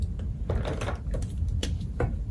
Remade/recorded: recorded